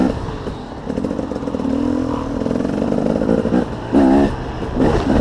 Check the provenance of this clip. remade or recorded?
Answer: recorded